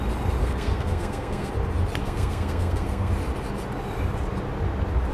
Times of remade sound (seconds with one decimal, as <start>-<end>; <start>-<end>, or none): 0.4-1.5; 2.0-3.1